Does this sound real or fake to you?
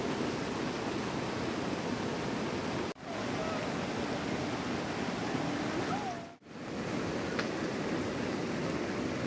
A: real